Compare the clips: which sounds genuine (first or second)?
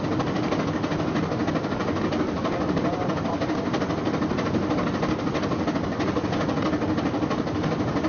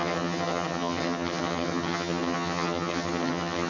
first